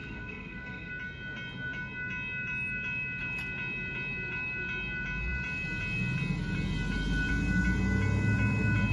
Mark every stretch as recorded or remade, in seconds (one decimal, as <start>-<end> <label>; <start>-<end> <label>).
0.0-0.9 remade; 0.9-8.9 recorded